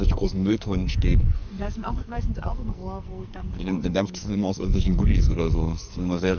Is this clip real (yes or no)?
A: no